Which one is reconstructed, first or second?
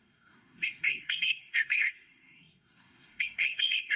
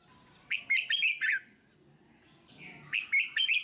first